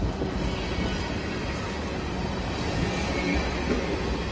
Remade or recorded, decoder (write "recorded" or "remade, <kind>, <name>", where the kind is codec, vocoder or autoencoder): recorded